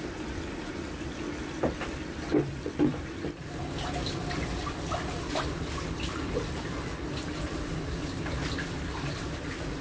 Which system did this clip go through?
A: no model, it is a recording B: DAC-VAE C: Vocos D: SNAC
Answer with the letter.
A